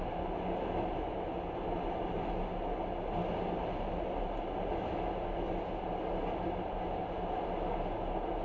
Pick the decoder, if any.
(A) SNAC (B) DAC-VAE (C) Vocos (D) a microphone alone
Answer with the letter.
D